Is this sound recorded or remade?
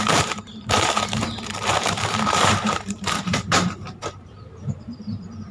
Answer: remade